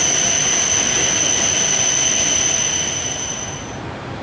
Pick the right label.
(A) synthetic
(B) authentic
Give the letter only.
B